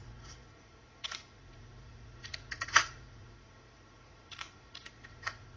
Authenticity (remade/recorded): remade